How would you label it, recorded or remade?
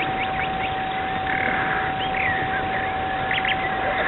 recorded